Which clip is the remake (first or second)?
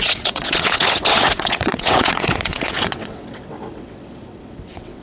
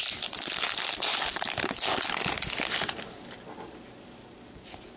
first